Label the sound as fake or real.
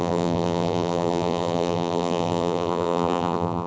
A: fake